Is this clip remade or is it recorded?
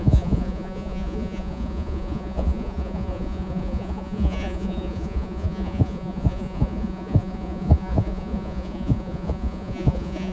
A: remade